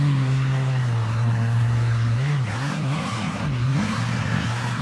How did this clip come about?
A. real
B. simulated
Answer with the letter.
B